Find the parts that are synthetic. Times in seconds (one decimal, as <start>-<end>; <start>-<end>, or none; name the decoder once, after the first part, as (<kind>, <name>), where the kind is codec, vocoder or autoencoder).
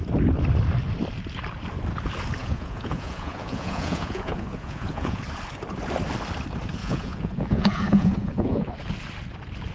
2.4-5.2 (vocoder, Vocos); 6.8-8.7